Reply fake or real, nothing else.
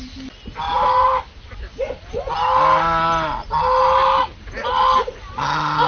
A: real